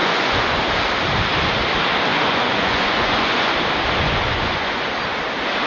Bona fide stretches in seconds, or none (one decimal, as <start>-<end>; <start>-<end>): 0.6-2.1; 3.5-4.0; 4.9-5.7